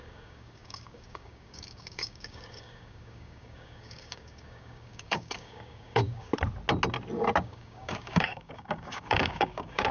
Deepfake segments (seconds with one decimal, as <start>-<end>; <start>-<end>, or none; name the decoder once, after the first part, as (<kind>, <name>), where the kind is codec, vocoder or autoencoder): 0.0-6.3 (codec, DAC); 7.4-9.9